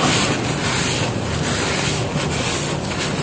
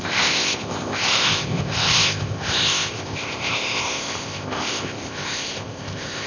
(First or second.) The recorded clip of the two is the first